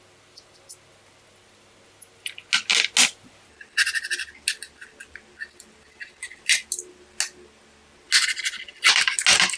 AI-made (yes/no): no